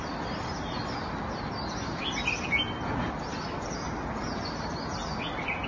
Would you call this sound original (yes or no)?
yes